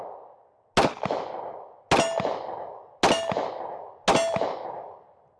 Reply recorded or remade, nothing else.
recorded